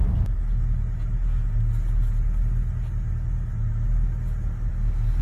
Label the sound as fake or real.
real